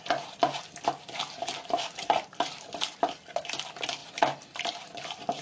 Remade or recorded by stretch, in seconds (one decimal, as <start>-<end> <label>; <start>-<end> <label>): 0.0-5.4 recorded